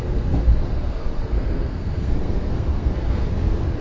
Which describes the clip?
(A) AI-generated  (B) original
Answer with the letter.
A